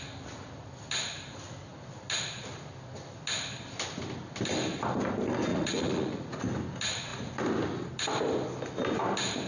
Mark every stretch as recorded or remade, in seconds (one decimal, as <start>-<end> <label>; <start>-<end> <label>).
0.0-5.5 recorded; 5.5-6.4 remade; 6.4-9.5 recorded